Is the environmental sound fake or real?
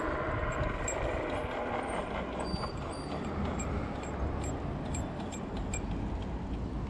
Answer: real